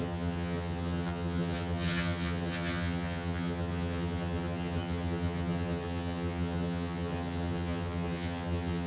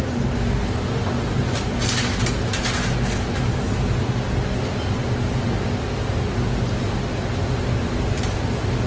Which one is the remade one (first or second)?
first